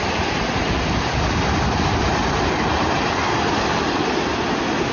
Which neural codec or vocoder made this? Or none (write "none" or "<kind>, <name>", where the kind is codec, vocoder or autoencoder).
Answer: none